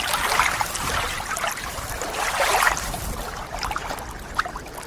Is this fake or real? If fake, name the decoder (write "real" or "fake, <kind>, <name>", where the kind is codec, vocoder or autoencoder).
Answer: real